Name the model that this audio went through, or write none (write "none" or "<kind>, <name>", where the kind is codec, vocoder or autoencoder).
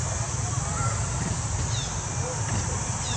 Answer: none